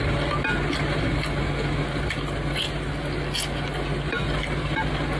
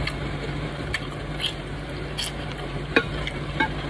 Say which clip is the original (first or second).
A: first